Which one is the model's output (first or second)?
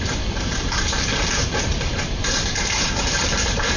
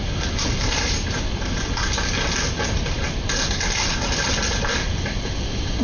first